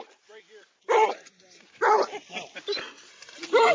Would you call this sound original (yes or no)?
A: yes